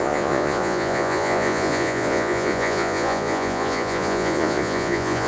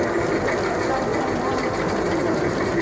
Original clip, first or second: second